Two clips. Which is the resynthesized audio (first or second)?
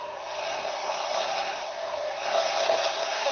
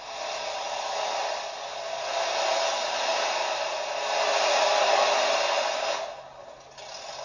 first